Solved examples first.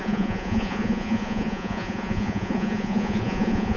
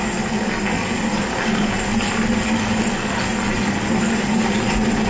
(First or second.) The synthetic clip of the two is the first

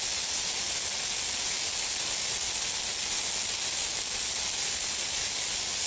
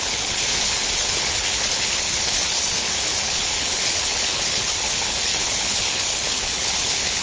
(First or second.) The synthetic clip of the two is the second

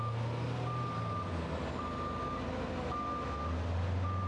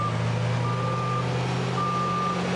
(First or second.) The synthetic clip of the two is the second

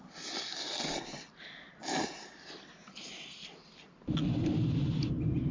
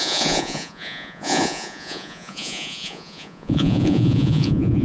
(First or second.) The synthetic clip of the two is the second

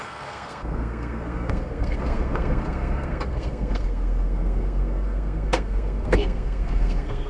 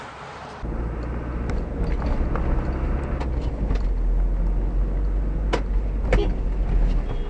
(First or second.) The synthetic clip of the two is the first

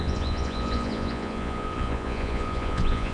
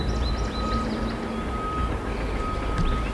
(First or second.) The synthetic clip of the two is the first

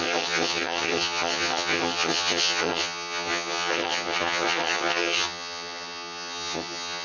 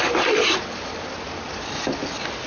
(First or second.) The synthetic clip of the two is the first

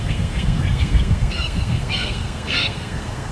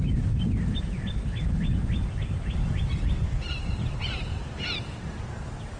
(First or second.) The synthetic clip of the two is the first